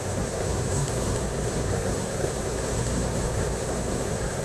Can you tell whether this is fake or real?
fake